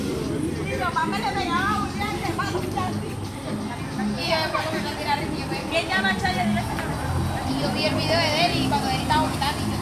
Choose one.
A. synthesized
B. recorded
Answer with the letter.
B